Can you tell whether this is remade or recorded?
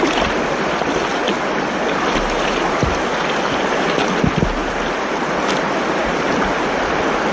recorded